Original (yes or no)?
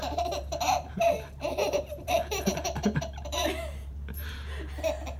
no